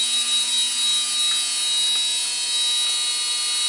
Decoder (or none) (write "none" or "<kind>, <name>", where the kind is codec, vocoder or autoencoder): none